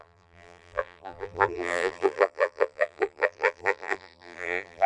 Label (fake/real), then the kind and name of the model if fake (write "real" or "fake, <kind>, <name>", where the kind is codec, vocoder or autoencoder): fake, vocoder, BigVGAN v2